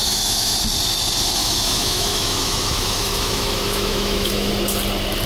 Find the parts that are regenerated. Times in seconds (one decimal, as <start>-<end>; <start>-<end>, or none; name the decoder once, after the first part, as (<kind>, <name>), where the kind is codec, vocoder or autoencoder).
0.0-0.6 (autoencoder, DAC-VAE); 1.4-4.5